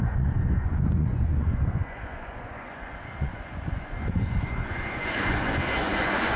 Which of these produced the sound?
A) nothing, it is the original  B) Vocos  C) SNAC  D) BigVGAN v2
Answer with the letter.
B